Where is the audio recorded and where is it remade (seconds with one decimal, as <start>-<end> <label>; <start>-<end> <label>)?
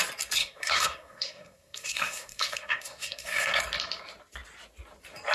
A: 0.0-0.4 recorded; 0.4-3.6 remade; 3.6-5.3 recorded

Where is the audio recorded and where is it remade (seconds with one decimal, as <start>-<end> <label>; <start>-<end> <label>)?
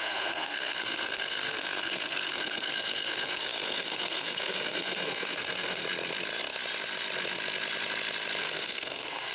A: 0.0-5.8 remade; 5.8-8.4 recorded; 8.4-9.3 remade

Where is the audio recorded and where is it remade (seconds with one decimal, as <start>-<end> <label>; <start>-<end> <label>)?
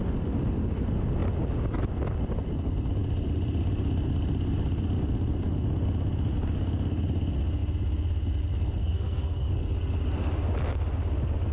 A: 0.0-8.8 recorded; 8.8-9.5 remade; 9.5-11.5 recorded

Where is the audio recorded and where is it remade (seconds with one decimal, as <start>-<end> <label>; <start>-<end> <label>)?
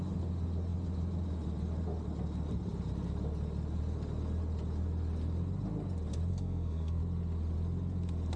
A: 0.0-6.3 recorded; 6.3-7.0 remade; 7.0-8.4 recorded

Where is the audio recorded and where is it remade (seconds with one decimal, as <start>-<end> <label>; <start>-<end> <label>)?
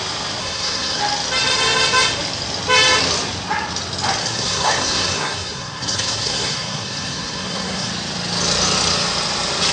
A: 0.0-0.4 recorded; 0.4-1.0 remade; 1.0-4.2 recorded; 4.2-7.9 remade; 7.9-9.7 recorded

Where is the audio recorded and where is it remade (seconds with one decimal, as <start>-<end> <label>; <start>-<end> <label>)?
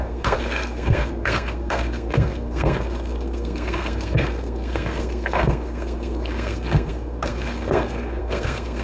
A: 0.0-8.8 remade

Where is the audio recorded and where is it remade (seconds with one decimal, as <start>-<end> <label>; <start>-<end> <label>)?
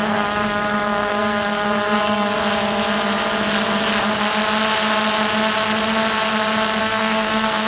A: 0.0-2.4 remade; 2.4-6.8 recorded; 6.8-7.7 remade